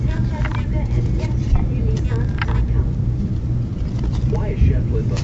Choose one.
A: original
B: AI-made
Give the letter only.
B